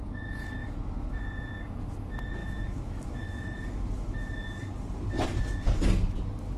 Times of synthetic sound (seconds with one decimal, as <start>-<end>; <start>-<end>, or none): 0.6-1.2; 2.4-4.2